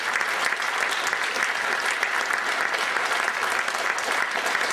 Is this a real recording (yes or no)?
yes